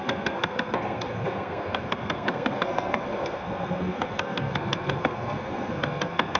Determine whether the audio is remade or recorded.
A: remade